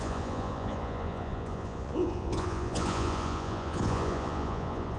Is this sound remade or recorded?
remade